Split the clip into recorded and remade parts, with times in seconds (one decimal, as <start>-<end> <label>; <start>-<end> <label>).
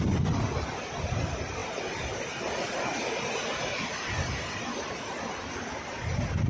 0.0-6.5 recorded